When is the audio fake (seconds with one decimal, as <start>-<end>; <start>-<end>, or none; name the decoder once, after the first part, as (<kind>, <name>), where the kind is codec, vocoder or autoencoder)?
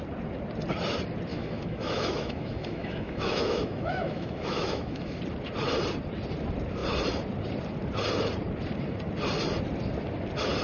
1.3-5.2 (autoencoder, DAC-VAE)